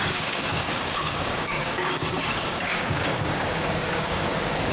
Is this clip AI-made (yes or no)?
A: yes